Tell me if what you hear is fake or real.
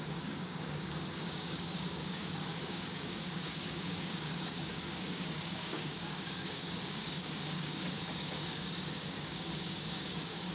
fake